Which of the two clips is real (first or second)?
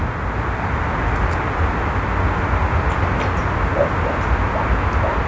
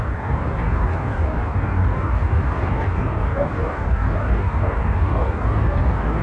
first